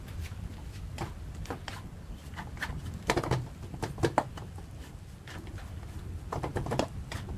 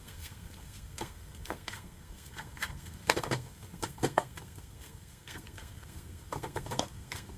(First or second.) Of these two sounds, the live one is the first